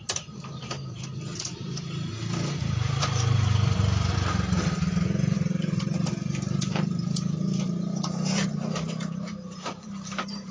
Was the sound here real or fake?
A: fake